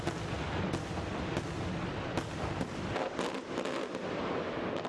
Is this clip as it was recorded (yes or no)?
yes